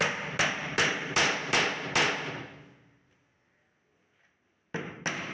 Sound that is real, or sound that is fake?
real